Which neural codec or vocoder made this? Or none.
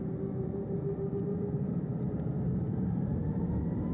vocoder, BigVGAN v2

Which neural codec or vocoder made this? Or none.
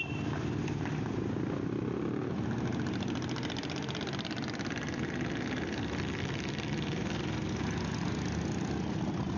none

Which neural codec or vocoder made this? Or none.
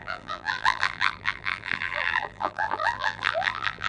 vocoder, BigVGAN v2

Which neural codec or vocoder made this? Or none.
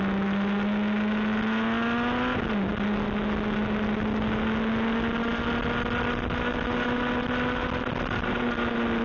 none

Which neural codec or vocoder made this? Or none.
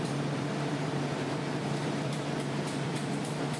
vocoder, BigVGAN v2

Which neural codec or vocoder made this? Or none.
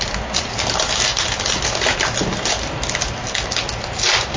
none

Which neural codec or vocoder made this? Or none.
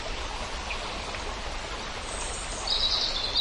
none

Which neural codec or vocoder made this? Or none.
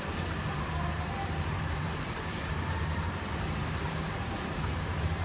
vocoder, BigVGAN v2